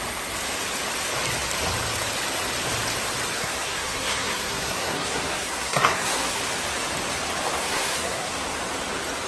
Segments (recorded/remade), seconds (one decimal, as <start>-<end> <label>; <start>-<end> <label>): 0.0-3.3 recorded; 3.3-6.4 remade; 6.4-7.6 recorded; 7.6-8.3 remade; 8.3-9.3 recorded